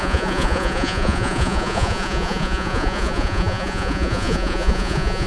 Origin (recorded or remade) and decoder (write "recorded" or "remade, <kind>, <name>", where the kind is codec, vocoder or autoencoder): remade, vocoder, Vocos